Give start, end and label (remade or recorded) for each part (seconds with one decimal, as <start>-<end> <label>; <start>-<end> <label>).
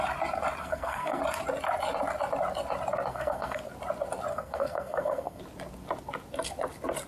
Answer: 0.0-0.6 recorded; 0.6-1.2 remade; 1.2-3.1 recorded; 3.1-3.6 remade; 3.6-4.3 recorded; 4.3-5.4 remade; 5.4-7.1 recorded